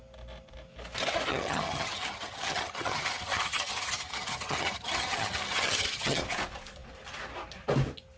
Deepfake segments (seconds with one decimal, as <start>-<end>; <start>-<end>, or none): 1.3-6.2